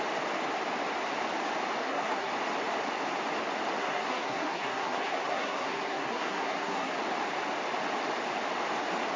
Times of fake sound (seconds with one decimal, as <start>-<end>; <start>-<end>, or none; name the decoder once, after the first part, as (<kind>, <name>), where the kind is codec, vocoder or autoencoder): 1.8-2.3 (codec, SNAC); 3.8-6.9